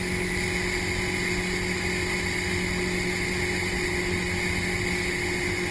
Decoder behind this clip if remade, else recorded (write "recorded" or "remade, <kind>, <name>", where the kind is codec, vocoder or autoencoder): recorded